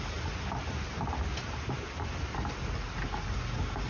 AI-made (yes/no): no